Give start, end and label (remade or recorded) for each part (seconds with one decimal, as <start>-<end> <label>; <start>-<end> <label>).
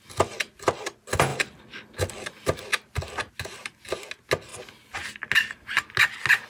0.0-6.5 recorded